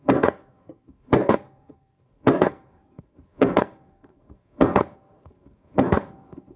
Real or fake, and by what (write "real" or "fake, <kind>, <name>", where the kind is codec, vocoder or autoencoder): fake, codec, SNAC